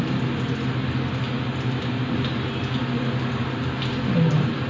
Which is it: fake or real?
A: real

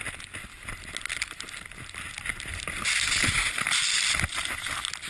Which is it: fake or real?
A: real